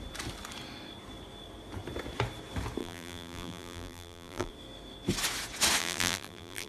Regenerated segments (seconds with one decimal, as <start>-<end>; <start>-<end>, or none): 2.8-4.5; 5.8-6.7